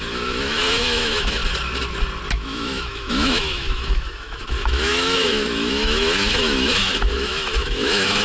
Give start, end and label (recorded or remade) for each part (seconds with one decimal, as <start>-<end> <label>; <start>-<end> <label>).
0.0-1.4 remade; 1.4-2.3 recorded; 2.3-8.2 remade